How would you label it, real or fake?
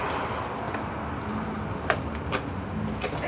real